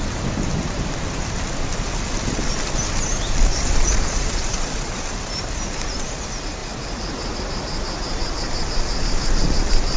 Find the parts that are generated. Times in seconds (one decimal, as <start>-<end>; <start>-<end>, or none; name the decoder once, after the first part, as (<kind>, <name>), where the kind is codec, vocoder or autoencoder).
3.5-5.0 (vocoder, Vocos); 6.6-7.4